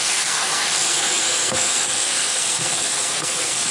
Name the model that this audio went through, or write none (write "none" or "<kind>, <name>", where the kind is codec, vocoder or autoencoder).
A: codec, SNAC